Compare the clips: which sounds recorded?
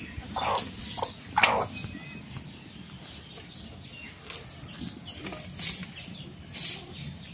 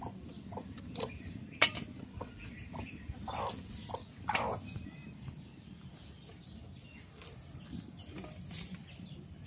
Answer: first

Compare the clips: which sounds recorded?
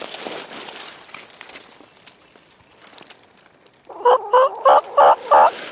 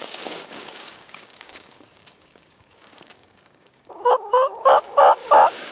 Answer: first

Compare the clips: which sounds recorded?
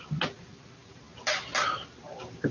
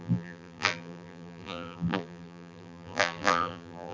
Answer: first